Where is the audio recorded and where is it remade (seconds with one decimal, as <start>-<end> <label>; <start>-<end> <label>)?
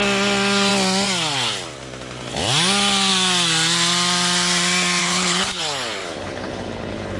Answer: 0.0-5.0 recorded; 5.0-5.6 remade; 5.6-6.0 recorded; 6.0-7.2 remade